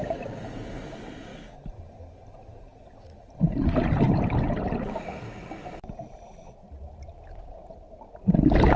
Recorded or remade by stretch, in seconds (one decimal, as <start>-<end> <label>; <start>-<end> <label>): 0.0-8.8 recorded